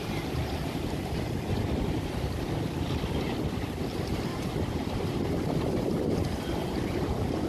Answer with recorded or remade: remade